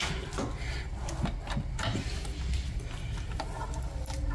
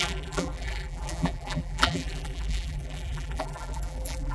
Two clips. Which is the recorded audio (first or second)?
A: first